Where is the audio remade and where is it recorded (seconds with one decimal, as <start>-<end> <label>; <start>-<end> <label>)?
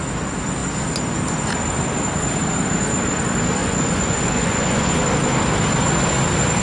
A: 0.0-3.6 recorded; 3.6-4.9 remade; 4.9-6.6 recorded